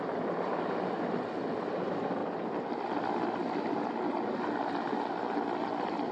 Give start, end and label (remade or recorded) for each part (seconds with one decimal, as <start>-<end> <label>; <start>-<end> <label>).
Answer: 0.0-6.1 recorded